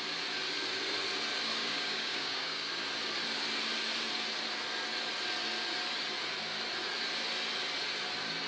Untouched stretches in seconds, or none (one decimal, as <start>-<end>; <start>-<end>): 0.0-1.6; 2.7-8.5